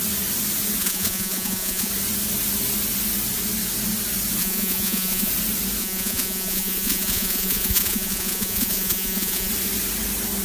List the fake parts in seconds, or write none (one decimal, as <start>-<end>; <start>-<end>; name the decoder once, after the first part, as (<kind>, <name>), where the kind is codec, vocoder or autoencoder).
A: 0.8-1.9 (vocoder, Vocos); 4.4-5.3; 5.8-9.5